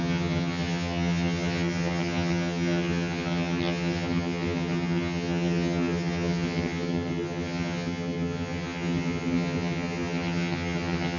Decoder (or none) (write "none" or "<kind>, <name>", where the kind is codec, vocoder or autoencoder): vocoder, HiFi-GAN